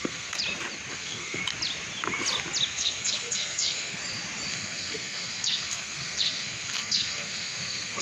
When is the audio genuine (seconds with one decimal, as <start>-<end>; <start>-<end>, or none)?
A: 0.4-0.9; 1.4-2.7; 4.0-4.5